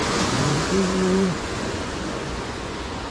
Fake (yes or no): yes